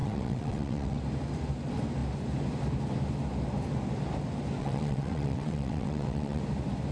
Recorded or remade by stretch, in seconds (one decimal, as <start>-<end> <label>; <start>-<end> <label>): 0.0-1.0 remade; 1.0-4.6 recorded; 4.6-6.4 remade; 6.4-6.9 recorded